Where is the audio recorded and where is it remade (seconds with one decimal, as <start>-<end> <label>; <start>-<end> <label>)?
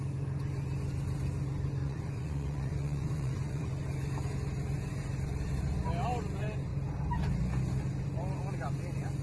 0.0-1.8 recorded; 1.8-3.7 remade; 3.7-9.2 recorded